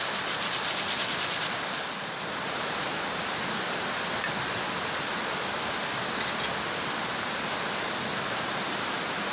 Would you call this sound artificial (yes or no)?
no